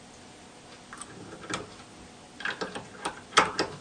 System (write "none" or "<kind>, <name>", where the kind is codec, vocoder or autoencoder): none